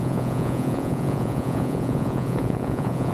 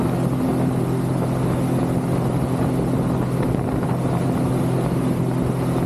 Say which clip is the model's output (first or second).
first